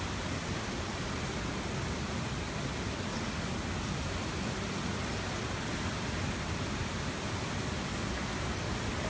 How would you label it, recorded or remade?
recorded